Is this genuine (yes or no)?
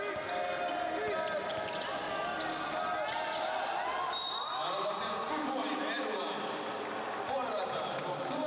yes